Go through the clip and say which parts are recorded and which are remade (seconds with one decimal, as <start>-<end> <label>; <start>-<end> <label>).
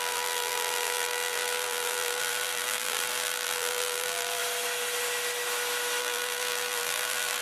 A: 0.0-4.4 remade; 4.4-6.0 recorded; 6.0-7.4 remade